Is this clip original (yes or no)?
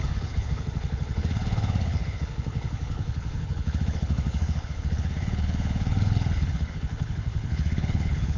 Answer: no